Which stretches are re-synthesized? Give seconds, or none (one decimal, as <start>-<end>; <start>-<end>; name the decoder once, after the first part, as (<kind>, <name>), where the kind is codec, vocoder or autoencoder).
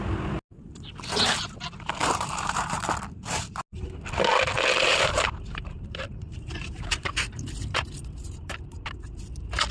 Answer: 1.3-2.8 (vocoder, BigVGAN v2); 4.9-9.2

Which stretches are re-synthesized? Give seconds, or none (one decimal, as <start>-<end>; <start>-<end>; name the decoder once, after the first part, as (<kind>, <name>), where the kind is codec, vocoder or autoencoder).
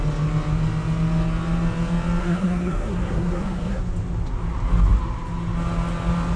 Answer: 2.2-3.8 (codec, SNAC)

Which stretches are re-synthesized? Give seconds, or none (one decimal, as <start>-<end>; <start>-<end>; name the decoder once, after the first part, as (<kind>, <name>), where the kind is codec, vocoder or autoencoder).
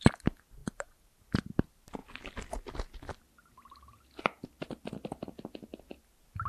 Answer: 0.6-1.2 (vocoder, BigVGAN v2)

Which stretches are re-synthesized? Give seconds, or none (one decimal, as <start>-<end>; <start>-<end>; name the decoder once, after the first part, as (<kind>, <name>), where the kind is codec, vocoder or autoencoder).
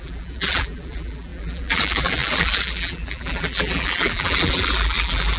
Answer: 0.0-5.4 (vocoder, BigVGAN v2)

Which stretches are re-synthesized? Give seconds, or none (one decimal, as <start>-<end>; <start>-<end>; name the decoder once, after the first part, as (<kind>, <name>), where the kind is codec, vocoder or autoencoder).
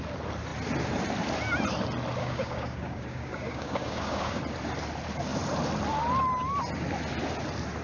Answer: 2.2-4.4 (codec, DAC)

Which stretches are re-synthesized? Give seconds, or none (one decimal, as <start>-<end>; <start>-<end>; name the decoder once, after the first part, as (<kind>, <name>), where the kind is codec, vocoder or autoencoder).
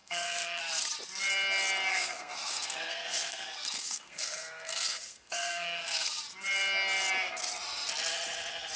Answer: 0.0-0.6 (codec, SNAC); 1.9-6.2